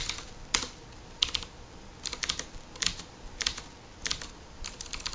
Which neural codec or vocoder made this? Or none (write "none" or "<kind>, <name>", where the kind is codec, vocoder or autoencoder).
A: vocoder, BigVGAN v2